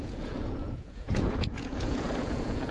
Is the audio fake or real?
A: fake